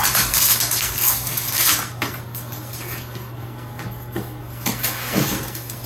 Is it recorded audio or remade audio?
remade